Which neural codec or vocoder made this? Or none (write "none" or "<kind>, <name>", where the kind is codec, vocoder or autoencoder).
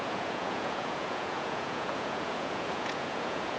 vocoder, Vocos